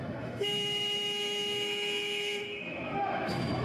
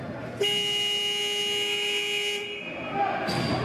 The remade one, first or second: first